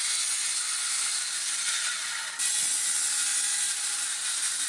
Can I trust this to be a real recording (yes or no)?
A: yes